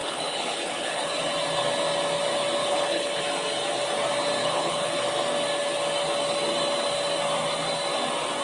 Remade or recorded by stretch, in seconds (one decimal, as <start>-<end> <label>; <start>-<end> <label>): 0.0-1.1 remade; 1.1-2.6 recorded; 2.6-3.2 remade; 3.2-4.4 recorded; 4.4-4.9 remade; 4.9-8.4 recorded